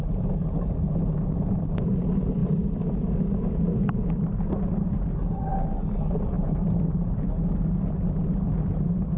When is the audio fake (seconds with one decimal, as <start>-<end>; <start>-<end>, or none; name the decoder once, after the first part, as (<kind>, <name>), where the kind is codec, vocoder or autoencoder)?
none